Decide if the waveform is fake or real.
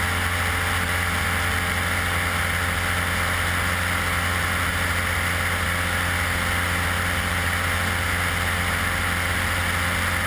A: real